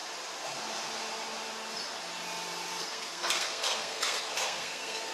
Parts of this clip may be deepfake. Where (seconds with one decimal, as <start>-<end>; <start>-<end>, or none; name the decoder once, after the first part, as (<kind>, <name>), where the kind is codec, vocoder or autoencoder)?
2.8-5.1 (codec, SNAC)